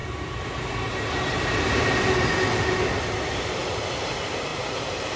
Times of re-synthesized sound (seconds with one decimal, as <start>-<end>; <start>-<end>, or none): 4.5-5.2